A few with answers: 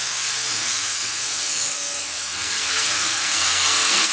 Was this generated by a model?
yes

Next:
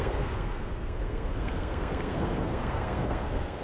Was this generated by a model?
yes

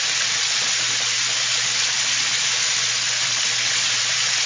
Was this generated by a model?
no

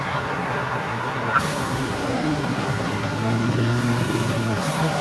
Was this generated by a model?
yes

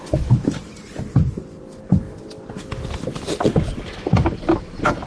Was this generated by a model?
no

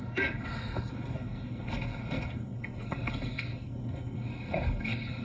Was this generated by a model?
yes